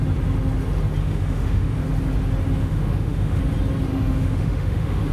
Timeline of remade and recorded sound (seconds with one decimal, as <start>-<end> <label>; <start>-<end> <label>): 0.0-1.0 recorded; 1.0-1.8 remade; 1.8-2.6 recorded; 2.6-3.4 remade; 3.4-3.9 recorded; 3.9-5.1 remade